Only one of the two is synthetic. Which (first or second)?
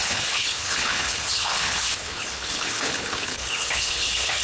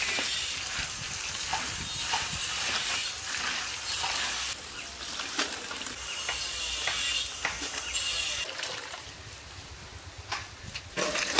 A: first